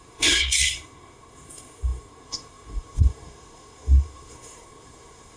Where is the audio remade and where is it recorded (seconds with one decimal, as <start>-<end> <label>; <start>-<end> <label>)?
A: 0.0-5.4 remade